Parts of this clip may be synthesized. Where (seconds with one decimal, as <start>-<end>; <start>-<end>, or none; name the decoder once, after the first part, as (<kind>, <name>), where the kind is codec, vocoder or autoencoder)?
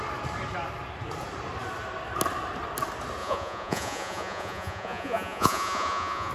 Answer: 3.2-6.3 (vocoder, Vocos)